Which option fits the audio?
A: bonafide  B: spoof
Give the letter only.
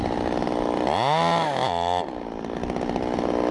A